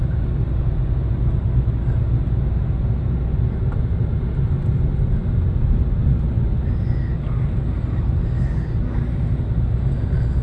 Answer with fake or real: real